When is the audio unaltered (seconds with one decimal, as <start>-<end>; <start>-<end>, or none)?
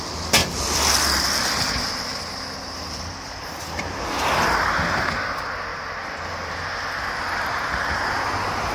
0.0-0.4; 3.8-8.7